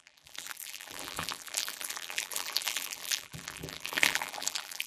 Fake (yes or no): yes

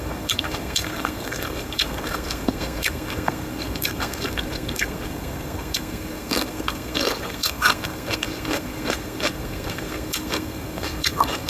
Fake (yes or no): yes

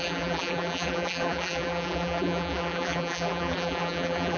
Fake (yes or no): yes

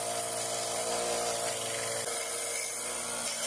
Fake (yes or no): no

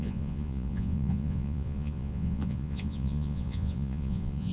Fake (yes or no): yes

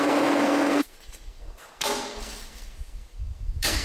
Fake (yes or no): yes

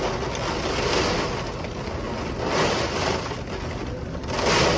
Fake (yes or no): no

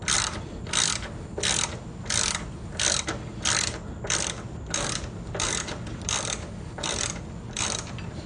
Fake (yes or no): no